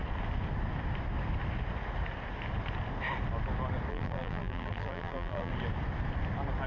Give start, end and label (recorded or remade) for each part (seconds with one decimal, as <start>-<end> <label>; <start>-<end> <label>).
0.0-3.9 recorded; 3.9-5.5 remade; 5.5-6.7 recorded